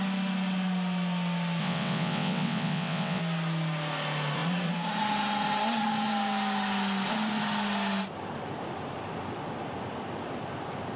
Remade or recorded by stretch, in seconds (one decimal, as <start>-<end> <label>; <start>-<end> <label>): 0.0-1.6 recorded; 1.6-3.2 remade; 3.2-11.0 recorded